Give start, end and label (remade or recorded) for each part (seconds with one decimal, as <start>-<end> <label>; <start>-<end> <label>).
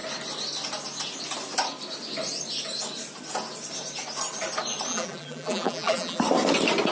0.0-4.9 recorded; 4.9-6.2 remade; 6.2-6.9 recorded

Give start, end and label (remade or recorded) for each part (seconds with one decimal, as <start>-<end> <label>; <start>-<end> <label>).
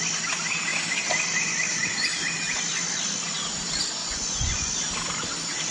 0.0-4.0 recorded; 4.0-4.7 remade; 4.7-5.7 recorded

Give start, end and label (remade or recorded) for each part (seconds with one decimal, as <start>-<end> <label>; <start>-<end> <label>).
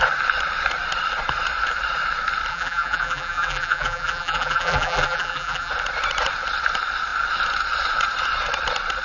0.0-2.5 recorded; 2.5-5.7 remade; 5.7-9.0 recorded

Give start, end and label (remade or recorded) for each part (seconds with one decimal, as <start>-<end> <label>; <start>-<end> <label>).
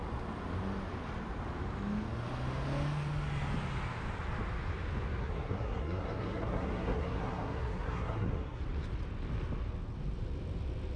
0.0-5.2 recorded; 5.2-8.6 remade; 8.6-11.0 recorded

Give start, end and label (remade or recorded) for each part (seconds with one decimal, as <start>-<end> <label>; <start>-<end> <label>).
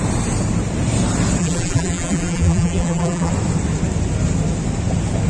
0.0-1.4 recorded; 1.4-3.3 remade; 3.3-5.3 recorded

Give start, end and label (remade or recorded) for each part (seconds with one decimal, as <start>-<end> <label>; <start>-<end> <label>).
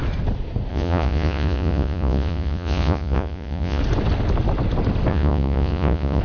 0.0-0.7 recorded; 0.7-3.8 remade; 3.8-5.1 recorded; 5.1-6.2 remade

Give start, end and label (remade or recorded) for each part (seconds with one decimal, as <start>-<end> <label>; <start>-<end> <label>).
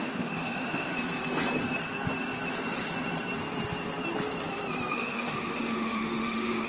0.0-0.9 remade; 0.9-4.9 recorded; 4.9-6.7 remade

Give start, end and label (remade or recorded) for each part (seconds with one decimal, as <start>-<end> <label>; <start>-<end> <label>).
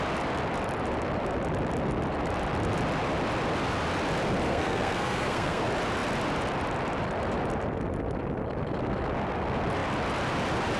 0.0-4.5 recorded; 4.5-5.6 remade; 5.6-10.8 recorded